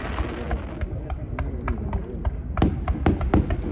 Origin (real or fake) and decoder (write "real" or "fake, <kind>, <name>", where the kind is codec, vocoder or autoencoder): real